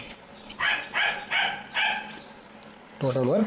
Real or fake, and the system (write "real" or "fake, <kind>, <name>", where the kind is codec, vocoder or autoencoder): real